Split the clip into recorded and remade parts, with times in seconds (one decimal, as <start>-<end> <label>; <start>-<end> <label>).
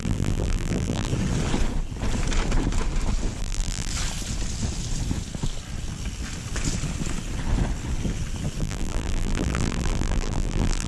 0.0-1.1 remade; 1.1-3.4 recorded; 3.4-3.9 remade; 3.9-8.6 recorded; 8.6-10.9 remade